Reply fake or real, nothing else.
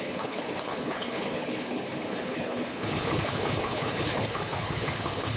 fake